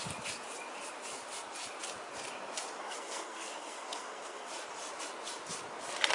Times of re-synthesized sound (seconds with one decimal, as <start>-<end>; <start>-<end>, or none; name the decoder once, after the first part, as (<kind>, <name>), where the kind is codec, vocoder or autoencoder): 2.8-4.5 (codec, SNAC)

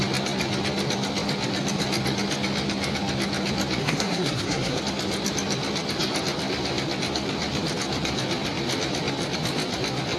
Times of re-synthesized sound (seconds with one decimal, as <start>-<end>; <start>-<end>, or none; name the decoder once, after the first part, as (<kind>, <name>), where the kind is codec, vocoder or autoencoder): 3.8-4.8 (codec, SNAC)